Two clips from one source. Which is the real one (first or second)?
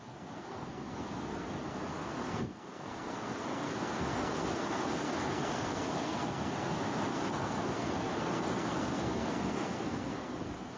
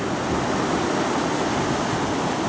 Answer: second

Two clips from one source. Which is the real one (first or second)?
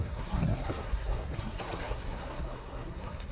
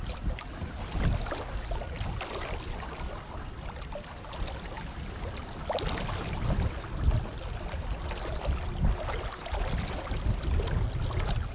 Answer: second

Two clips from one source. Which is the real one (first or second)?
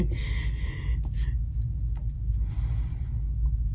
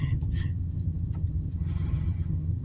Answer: first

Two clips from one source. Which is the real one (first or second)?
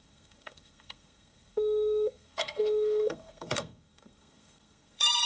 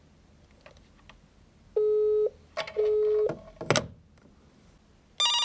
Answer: second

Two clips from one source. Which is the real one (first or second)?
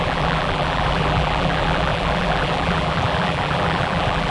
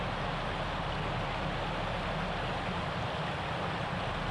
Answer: second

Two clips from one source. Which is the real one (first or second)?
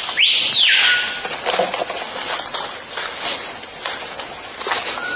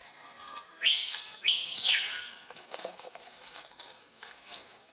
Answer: first